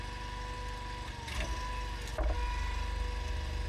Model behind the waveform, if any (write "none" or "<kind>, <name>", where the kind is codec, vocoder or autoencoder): none